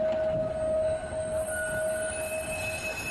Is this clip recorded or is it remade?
recorded